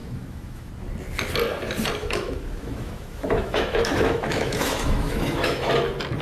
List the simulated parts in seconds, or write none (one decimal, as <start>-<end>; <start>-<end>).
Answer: 0.0-0.7; 2.0-5.7